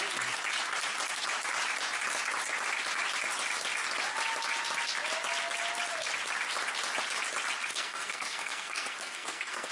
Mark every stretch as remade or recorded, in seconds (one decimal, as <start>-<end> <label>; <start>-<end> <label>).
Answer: 0.0-7.7 recorded; 7.7-9.7 remade